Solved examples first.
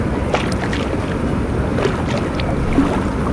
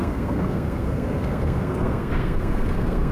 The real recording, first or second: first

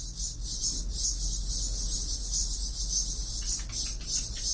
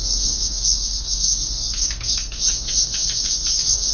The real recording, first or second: first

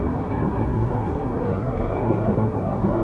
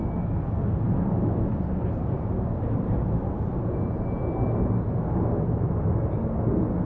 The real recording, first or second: second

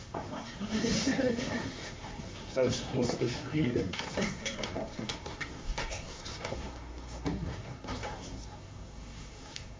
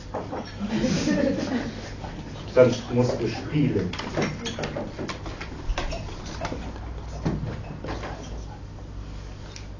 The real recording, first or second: second